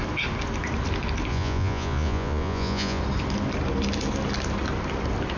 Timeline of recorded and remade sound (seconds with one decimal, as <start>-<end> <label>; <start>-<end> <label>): 0.0-1.3 recorded; 1.3-3.0 remade; 3.0-5.4 recorded